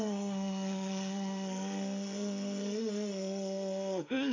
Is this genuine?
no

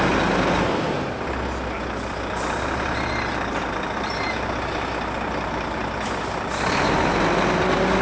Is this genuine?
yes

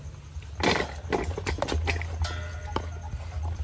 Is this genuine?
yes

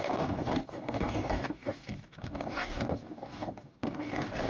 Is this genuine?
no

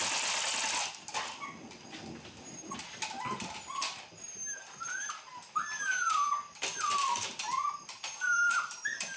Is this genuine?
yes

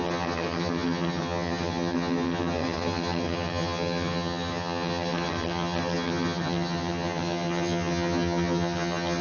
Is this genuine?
no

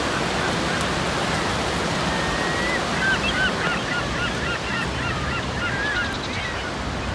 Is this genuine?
yes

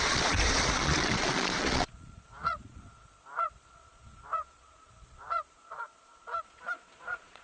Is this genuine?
no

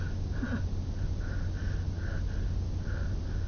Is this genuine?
yes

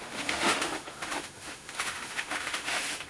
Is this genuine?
no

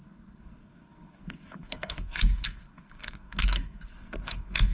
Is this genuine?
no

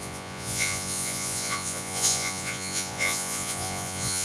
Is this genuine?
no